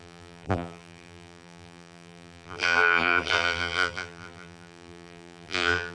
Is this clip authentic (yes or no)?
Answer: no